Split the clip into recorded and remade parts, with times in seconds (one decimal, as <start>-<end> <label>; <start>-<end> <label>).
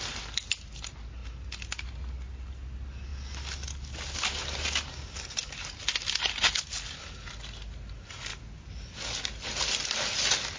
0.0-10.6 recorded